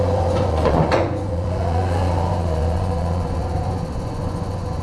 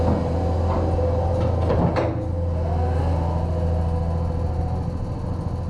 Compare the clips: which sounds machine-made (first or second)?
first